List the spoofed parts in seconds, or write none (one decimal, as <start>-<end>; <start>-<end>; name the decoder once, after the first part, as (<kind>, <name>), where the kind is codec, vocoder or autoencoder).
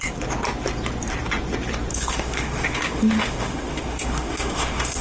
1.9-5.0 (autoencoder, DAC-VAE)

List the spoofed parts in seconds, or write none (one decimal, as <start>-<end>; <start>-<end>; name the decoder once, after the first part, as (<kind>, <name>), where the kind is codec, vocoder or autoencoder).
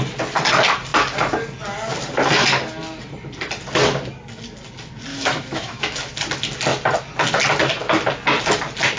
5.1-6.1 (autoencoder, DAC-VAE)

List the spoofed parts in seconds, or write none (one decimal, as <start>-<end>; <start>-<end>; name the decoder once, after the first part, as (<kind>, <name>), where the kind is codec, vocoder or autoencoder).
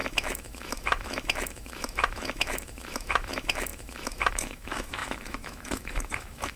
0.0-6.6 (autoencoder, DAC-VAE)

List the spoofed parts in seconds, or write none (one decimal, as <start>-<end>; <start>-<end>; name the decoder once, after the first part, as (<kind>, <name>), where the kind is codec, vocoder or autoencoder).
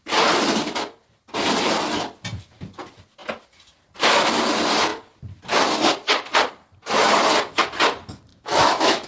8.3-9.1 (autoencoder, DAC-VAE)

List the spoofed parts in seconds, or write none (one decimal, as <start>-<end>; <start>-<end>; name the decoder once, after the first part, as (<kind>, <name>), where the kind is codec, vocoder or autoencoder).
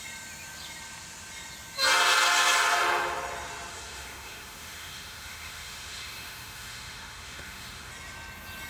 3.7-7.9 (autoencoder, DAC-VAE)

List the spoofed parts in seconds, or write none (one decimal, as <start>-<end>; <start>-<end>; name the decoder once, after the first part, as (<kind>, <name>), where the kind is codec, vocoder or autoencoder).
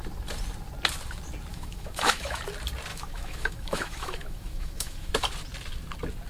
1.5-2.4 (autoencoder, DAC-VAE); 2.9-5.1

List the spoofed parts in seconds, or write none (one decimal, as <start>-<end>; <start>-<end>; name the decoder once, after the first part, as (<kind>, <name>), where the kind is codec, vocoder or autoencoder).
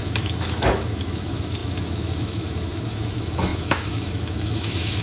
0.0-5.0 (autoencoder, DAC-VAE)